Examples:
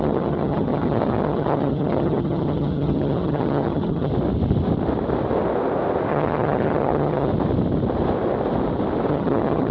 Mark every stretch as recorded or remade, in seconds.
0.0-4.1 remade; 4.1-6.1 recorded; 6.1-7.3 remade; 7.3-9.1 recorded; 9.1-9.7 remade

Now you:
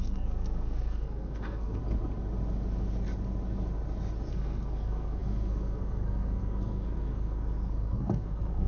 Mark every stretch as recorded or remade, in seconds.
0.0-1.8 remade; 1.8-4.3 recorded; 4.3-8.7 remade

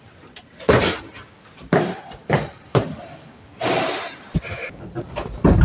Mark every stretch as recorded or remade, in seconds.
0.0-2.2 recorded; 2.2-5.6 remade

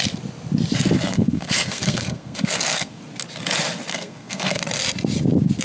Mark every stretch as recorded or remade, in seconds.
0.0-1.1 recorded; 1.1-3.0 remade; 3.0-3.9 recorded; 3.9-4.6 remade; 4.6-5.6 recorded

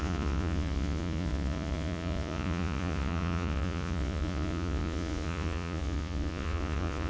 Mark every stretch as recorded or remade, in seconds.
0.0-7.1 remade

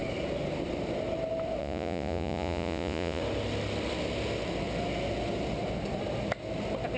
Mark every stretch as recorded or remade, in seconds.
0.0-1.6 recorded; 1.6-3.2 remade; 3.2-7.0 recorded

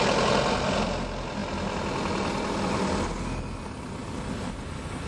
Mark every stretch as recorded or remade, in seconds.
0.0-5.1 recorded